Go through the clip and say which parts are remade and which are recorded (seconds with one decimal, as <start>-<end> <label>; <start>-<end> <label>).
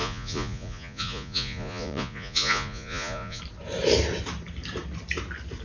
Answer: 0.0-3.4 remade; 3.4-5.6 recorded